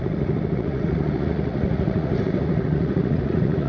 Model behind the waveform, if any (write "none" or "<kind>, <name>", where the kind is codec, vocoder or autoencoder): vocoder, Vocos